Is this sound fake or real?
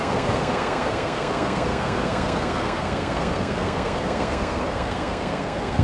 fake